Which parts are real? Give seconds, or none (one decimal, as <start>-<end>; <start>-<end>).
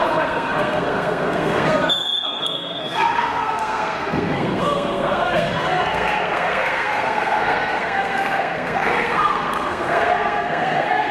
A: none